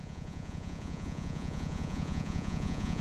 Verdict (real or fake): fake